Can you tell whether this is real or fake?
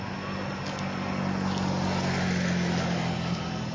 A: real